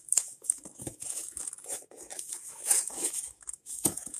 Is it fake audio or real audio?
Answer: fake